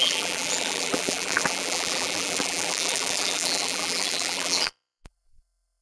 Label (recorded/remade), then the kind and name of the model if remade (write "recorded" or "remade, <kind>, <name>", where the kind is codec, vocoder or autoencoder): remade, vocoder, BigVGAN v2